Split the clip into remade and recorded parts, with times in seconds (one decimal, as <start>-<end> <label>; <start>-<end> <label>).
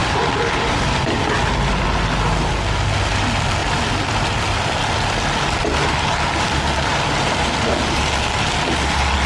0.0-0.7 remade; 0.7-3.6 recorded; 3.6-6.0 remade; 6.0-6.9 recorded; 6.9-8.2 remade; 8.2-9.3 recorded